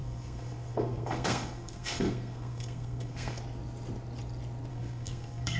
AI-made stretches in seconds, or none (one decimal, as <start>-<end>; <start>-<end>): 0.0-3.4; 4.7-5.6